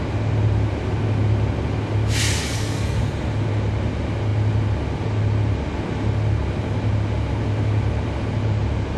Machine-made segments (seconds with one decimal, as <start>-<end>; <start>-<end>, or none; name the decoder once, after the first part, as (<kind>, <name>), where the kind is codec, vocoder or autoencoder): 2.4-3.0 (codec, SNAC)

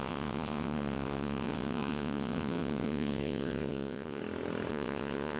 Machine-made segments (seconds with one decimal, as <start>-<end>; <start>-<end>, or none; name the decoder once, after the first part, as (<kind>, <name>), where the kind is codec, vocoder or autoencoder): 0.0-4.2 (vocoder, WaveNeXt); 4.7-5.4

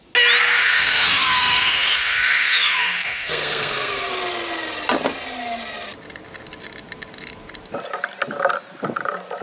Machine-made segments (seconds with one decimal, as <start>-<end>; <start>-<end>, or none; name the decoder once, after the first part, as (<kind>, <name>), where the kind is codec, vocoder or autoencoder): 0.6-4.1 (codec, SNAC)

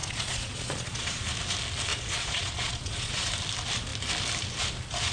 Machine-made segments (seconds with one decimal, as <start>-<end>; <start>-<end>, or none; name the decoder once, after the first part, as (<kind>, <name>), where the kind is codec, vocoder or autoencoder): 0.0-1.3 (vocoder, Vocos); 1.9-3.3

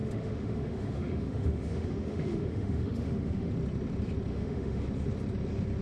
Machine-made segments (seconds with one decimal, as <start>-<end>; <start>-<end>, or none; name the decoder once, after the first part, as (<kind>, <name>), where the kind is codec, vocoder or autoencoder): 0.0-3.5 (autoencoder, DAC-VAE); 4.3-4.8